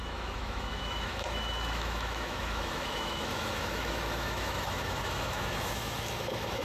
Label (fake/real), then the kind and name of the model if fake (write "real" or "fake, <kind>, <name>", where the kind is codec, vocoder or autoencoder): fake, autoencoder, DAC-VAE